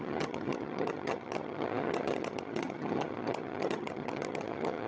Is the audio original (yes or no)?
no